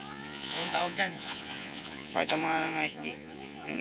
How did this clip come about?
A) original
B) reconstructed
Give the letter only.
B